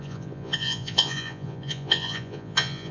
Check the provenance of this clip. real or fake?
fake